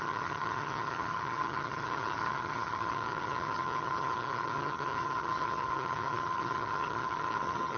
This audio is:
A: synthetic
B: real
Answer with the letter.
A